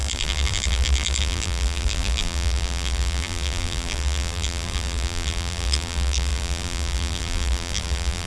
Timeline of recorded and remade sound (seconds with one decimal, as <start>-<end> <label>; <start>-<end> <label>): 0.0-8.3 remade